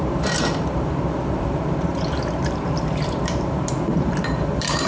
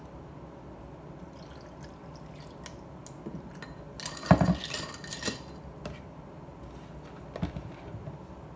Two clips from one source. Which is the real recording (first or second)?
second